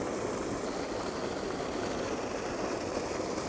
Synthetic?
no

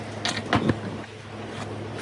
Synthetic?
no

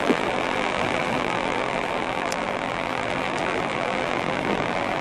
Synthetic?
yes